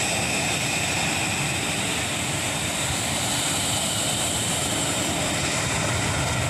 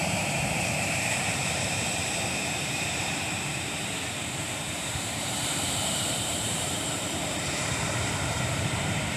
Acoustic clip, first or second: first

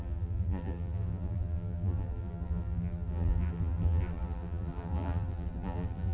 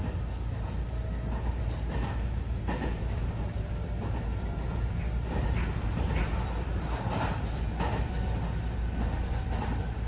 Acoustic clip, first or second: second